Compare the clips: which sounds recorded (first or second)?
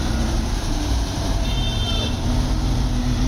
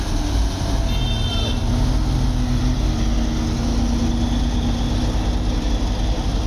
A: second